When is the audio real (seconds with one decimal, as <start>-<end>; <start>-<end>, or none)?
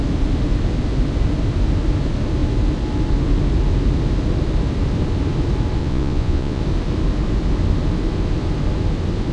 0.0-5.8; 6.6-9.3